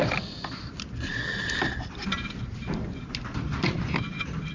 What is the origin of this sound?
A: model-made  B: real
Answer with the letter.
B